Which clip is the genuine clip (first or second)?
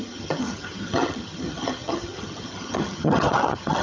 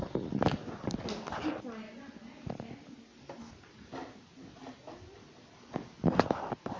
second